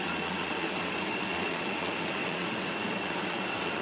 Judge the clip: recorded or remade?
remade